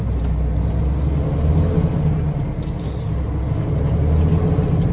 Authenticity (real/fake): real